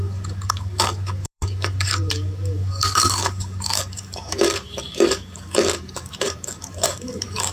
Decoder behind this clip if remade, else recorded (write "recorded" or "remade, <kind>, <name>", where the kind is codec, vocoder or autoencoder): remade, codec, DAC